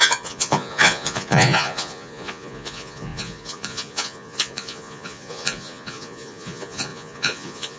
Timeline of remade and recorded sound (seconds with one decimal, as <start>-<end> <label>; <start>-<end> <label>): 0.0-7.8 remade

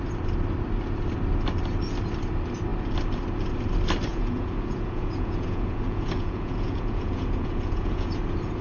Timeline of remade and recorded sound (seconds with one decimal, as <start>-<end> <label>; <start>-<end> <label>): 0.0-4.1 recorded; 4.1-8.1 remade; 8.1-8.6 recorded

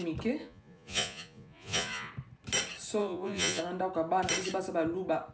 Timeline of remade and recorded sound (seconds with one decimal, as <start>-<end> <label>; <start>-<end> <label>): 0.0-0.4 recorded; 0.4-2.1 remade; 2.1-3.0 recorded; 3.0-3.6 remade; 3.6-5.3 recorded

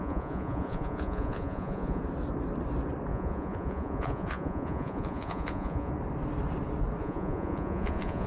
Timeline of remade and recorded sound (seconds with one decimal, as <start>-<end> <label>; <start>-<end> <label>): 0.0-2.0 remade; 2.0-3.1 recorded; 3.1-5.9 remade; 5.9-7.0 recorded; 7.0-8.3 remade

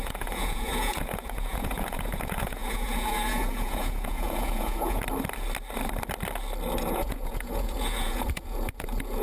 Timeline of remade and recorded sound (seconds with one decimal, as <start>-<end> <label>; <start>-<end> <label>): 0.0-5.0 remade; 5.0-6.9 recorded; 6.9-9.2 remade

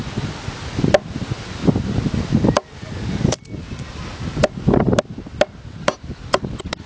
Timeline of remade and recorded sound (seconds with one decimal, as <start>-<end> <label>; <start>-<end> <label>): 0.0-6.9 recorded